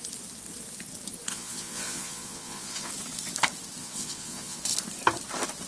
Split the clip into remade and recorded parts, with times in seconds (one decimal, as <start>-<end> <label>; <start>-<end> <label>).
0.0-1.3 recorded; 1.3-2.9 remade; 2.9-3.8 recorded; 3.8-4.6 remade; 4.6-5.7 recorded